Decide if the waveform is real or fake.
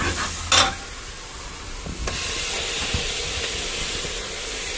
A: real